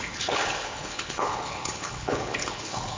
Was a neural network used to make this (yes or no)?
yes